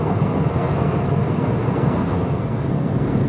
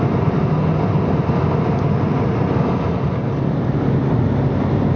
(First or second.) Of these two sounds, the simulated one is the first